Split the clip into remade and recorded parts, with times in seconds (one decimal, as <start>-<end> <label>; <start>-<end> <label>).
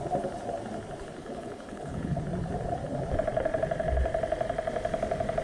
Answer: 0.0-1.2 recorded; 1.2-2.2 remade; 2.2-5.4 recorded